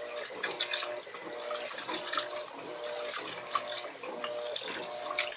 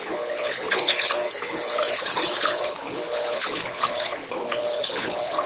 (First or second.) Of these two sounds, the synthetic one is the second